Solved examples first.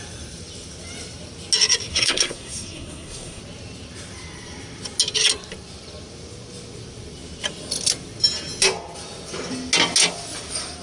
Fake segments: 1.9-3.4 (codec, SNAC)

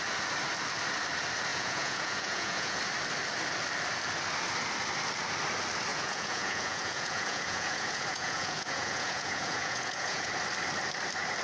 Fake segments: 1.5-2.8 (vocoder, Vocos); 5.9-10.3

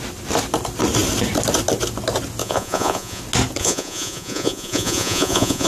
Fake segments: 2.4-3.2 (vocoder, Vocos); 3.6-5.7

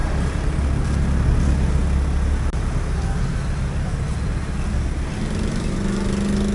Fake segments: none

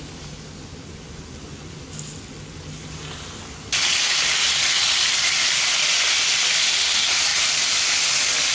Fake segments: 4.1-5.4 (vocoder, BigVGAN v2)

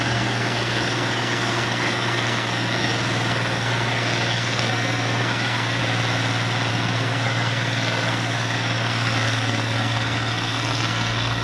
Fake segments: 0.0-5.8 (codec, SNAC); 6.7-11.4

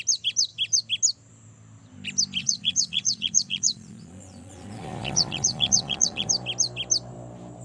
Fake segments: 2.4-6.3 (vocoder, Vocos)